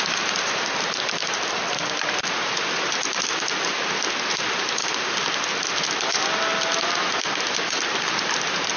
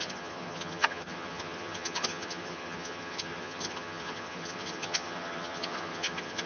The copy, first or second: second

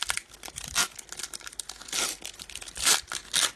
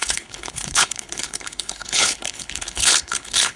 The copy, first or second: second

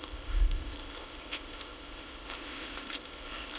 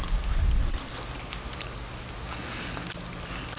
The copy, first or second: first